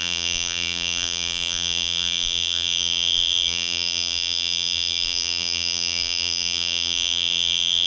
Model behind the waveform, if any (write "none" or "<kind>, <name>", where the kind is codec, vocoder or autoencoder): vocoder, BigVGAN v2